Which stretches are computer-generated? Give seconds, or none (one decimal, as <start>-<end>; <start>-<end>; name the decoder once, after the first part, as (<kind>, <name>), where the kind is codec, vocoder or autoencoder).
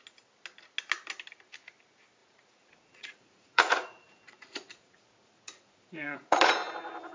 2.2-6.5 (vocoder, Vocos)